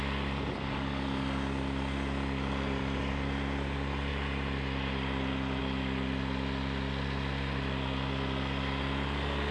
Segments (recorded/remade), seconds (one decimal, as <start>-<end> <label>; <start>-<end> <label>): 0.0-9.5 recorded